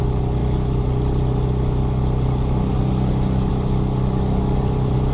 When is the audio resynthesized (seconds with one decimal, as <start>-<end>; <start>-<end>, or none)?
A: none